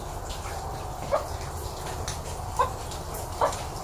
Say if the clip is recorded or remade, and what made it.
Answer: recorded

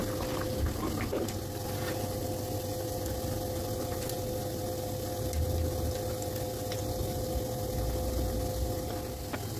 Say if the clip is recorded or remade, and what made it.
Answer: recorded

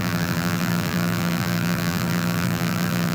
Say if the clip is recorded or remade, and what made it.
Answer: remade, vocoder, BigVGAN v2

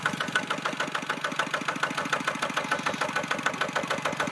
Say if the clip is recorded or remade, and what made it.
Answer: recorded